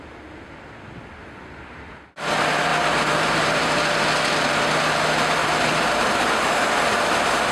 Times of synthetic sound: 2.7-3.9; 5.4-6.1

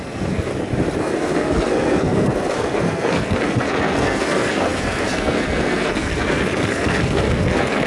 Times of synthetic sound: 0.0-0.5; 1.0-7.9

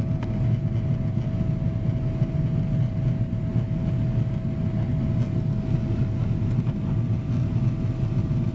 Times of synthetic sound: none

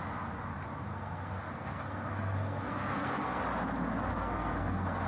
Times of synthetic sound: 0.9-3.4; 4.1-5.1

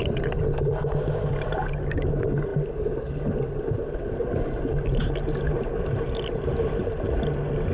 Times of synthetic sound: none

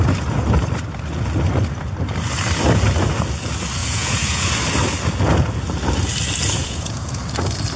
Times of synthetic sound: 3.8-4.5; 6.6-7.2